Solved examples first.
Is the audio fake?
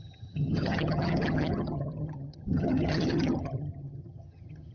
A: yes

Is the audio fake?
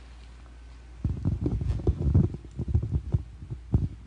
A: no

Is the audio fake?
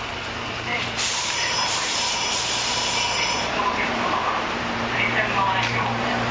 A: yes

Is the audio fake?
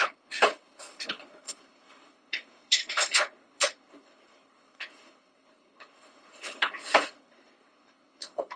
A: yes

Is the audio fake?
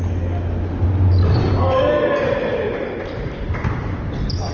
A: no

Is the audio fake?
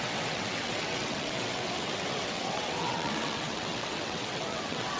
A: yes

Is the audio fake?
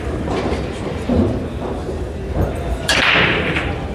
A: yes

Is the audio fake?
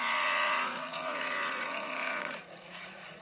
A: yes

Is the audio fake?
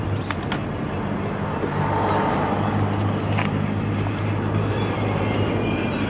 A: no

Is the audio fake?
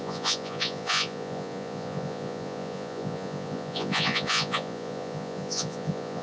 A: yes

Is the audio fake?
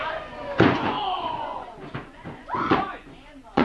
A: yes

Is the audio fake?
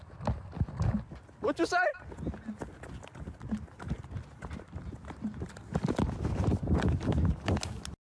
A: no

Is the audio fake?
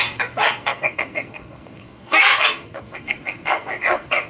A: yes